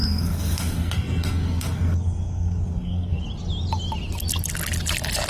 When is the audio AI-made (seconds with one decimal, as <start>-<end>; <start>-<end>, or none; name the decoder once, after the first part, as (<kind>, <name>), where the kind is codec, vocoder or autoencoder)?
0.0-3.2 (codec, SNAC)